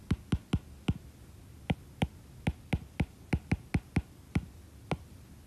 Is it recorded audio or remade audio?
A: recorded